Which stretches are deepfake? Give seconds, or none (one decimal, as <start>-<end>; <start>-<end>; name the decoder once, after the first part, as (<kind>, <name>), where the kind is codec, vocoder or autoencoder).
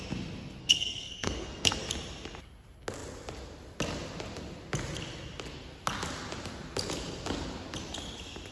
0.6-1.8 (codec, SNAC)